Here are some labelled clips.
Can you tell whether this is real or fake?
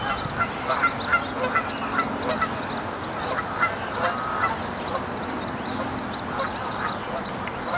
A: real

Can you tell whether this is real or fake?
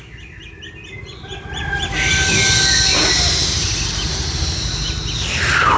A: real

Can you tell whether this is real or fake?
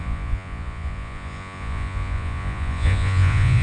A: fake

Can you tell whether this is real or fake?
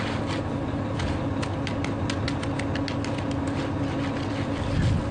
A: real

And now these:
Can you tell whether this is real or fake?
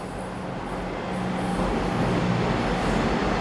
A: real